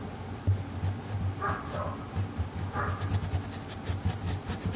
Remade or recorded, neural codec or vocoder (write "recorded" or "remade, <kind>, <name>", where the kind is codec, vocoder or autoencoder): recorded